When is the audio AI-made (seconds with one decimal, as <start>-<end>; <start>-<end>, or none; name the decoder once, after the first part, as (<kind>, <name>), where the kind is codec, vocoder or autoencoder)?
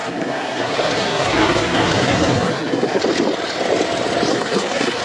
0.0-3.0 (codec, SNAC); 4.3-5.0